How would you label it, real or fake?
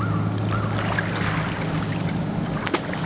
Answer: real